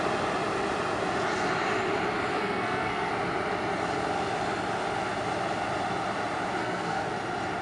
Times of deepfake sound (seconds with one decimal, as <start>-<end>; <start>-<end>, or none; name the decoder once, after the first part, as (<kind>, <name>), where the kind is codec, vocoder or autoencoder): 2.3-3.1 (codec, SNAC); 6.6-7.1